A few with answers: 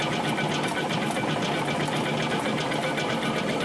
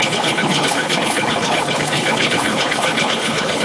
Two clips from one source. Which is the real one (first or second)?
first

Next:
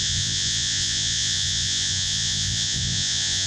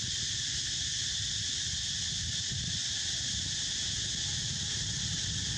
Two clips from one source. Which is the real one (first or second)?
second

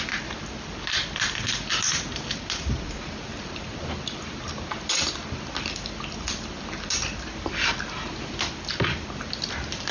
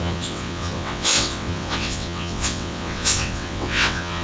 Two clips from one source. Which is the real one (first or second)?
first